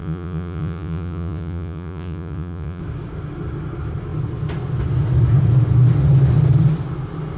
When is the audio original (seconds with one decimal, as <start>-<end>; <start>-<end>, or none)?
2.8-7.4